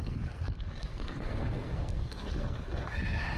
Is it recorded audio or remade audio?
remade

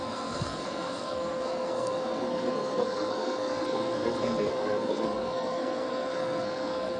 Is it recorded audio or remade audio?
remade